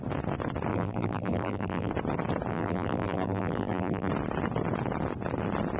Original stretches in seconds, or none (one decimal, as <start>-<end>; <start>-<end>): 0.0-0.7; 1.9-2.5; 4.1-5.8